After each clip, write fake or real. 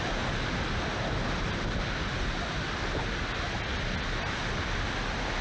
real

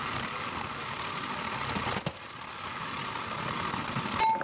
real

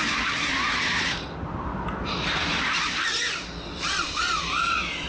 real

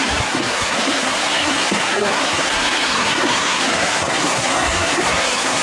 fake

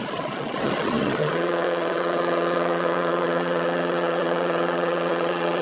fake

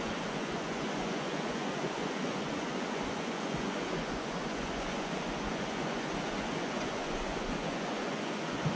fake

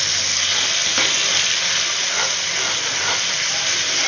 real